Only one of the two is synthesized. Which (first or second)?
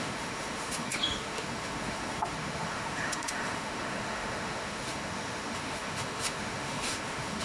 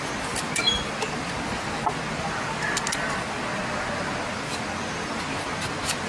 first